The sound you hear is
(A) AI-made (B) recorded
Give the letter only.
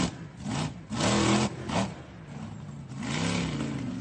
B